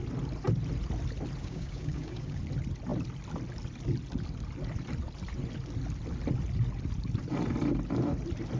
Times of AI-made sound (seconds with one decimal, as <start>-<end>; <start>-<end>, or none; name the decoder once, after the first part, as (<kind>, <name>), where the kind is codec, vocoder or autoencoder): 1.4-2.4 (codec, DAC)